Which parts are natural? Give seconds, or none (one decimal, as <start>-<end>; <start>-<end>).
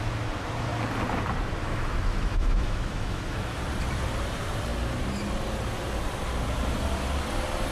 0.0-1.6; 3.6-7.7